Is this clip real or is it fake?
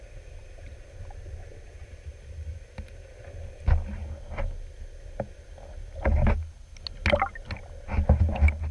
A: real